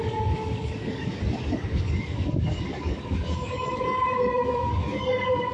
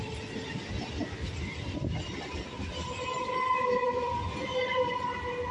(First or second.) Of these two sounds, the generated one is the first